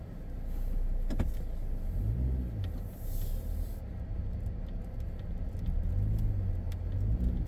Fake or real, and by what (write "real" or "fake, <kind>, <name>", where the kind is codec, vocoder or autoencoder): real